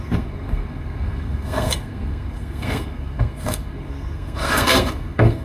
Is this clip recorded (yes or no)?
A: no